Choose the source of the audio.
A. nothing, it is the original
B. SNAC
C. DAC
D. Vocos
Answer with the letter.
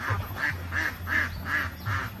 A